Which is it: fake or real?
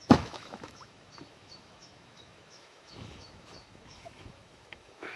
fake